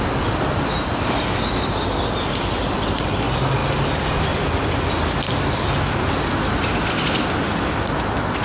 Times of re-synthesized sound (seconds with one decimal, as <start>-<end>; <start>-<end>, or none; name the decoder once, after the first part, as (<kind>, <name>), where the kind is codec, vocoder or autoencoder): none